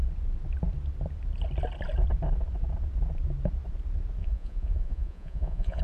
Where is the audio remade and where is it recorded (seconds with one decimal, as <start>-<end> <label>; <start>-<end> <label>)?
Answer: 0.0-4.2 recorded; 4.2-5.8 remade